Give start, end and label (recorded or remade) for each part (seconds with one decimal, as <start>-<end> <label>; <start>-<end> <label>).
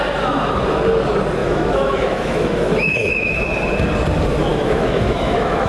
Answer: 0.0-1.4 recorded; 1.4-3.4 remade; 3.4-4.5 recorded; 4.5-5.7 remade